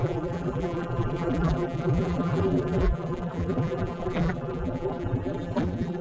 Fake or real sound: fake